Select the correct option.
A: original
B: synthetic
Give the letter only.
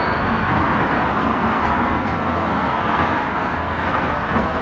B